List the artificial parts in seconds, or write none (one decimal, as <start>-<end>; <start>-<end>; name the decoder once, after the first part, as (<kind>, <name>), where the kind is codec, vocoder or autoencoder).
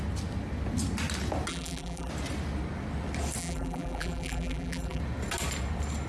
1.5-2.1 (vocoder, BigVGAN v2); 3.4-5.0